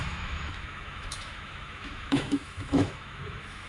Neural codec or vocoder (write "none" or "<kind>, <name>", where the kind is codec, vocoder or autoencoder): autoencoder, DAC-VAE